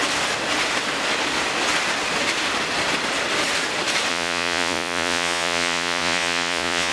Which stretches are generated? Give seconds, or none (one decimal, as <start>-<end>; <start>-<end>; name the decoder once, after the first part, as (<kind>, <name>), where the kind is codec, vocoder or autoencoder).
4.1-6.9 (vocoder, Vocos)